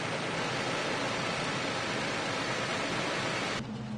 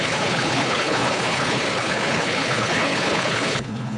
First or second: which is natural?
first